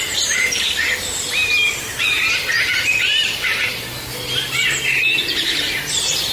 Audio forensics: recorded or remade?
remade